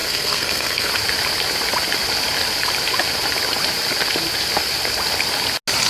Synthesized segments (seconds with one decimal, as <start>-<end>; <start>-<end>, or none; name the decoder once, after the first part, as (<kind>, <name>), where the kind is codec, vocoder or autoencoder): 0.0-0.9 (codec, SNAC)